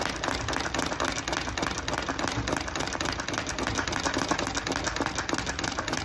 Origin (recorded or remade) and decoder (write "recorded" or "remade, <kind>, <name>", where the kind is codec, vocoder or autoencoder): recorded